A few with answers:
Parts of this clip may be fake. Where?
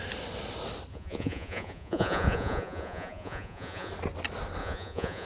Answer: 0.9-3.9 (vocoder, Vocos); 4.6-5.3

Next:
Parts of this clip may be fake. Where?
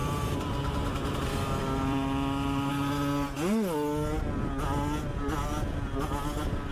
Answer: 0.0-2.7 (vocoder, BigVGAN v2)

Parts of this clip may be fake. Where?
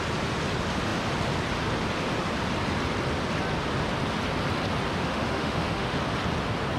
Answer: 5.0-6.0 (autoencoder, DAC-VAE)